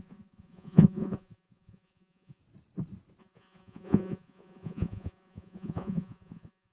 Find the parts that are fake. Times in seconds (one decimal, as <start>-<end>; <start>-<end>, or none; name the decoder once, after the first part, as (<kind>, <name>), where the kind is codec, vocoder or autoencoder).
0.0-2.4 (vocoder, Vocos); 3.2-6.7